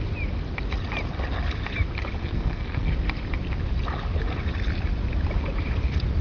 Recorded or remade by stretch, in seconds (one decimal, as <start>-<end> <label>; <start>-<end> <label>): 0.0-2.2 recorded; 2.2-2.9 remade; 2.9-6.2 recorded